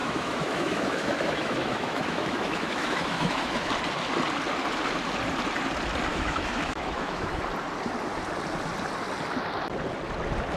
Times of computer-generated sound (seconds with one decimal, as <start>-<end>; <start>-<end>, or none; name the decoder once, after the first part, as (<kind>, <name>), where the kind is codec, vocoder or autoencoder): 0.0-3.7 (autoencoder, DAC-VAE); 6.1-7.4